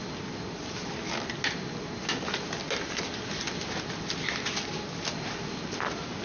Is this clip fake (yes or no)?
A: no